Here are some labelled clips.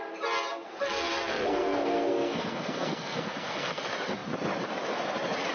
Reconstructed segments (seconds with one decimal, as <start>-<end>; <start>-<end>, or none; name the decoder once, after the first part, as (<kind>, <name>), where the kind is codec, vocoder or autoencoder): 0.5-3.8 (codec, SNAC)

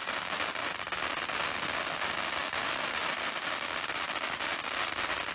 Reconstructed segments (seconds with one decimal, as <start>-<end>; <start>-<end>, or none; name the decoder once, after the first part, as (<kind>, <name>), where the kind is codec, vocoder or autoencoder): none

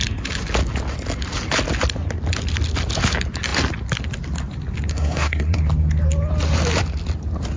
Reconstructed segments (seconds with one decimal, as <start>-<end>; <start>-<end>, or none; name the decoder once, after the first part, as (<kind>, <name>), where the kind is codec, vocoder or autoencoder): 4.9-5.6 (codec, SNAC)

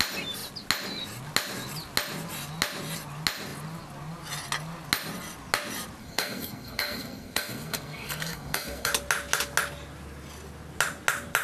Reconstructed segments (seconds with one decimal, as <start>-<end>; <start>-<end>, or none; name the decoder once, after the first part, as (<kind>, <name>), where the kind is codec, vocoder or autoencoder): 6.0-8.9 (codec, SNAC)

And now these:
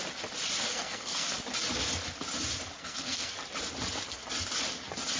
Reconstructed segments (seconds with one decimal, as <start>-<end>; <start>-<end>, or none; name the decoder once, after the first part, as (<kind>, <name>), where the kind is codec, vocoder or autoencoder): 0.7-1.3 (codec, SNAC); 2.8-3.3